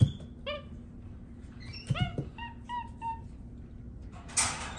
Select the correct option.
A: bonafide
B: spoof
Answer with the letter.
A